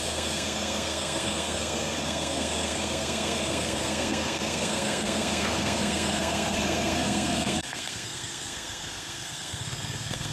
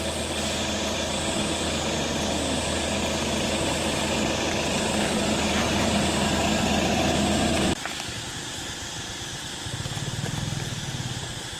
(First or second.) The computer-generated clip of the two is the first